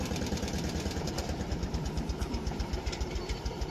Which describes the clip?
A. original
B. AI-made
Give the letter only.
B